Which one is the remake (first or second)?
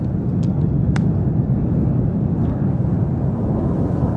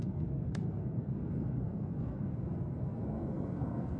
second